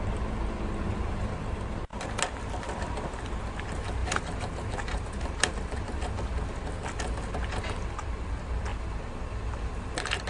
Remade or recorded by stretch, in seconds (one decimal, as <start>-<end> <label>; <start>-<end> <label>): 0.0-4.0 recorded; 4.0-6.4 remade; 6.4-10.3 recorded